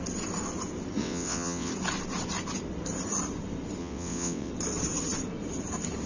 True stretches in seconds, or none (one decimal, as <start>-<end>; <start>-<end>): 0.0-1.0; 1.7-3.8; 4.5-6.1